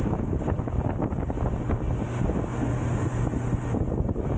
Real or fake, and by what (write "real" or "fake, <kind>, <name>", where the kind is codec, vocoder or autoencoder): real